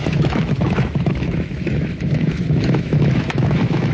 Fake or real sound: fake